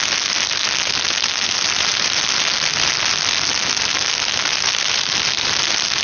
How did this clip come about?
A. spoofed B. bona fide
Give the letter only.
B